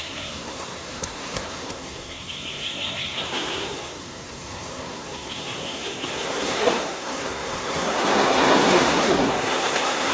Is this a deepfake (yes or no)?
yes